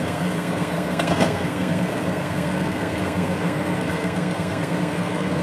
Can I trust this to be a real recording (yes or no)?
no